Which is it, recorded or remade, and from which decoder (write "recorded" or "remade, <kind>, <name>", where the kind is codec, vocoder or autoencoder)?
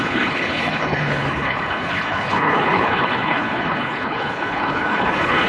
remade, codec, HILCodec